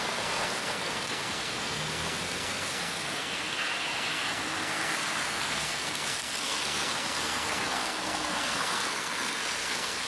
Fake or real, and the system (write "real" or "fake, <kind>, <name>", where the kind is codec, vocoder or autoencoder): fake, codec, SNAC